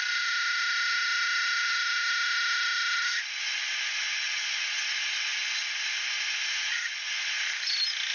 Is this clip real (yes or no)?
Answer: yes